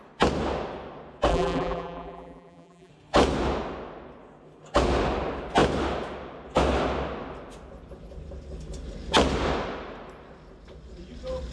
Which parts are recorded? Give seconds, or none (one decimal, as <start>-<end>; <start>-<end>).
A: 0.0-1.3; 2.9-11.5